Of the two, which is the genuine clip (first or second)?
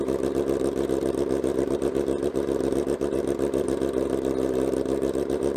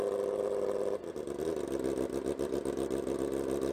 second